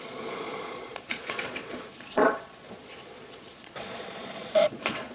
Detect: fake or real fake